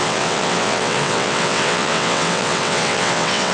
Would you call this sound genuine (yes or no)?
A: no